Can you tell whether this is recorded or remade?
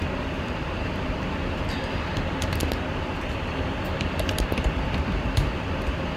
remade